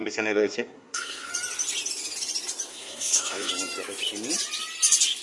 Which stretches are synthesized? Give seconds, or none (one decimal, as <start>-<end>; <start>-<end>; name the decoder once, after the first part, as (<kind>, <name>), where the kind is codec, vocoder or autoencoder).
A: 0.0-1.3 (codec, SNAC); 2.7-3.5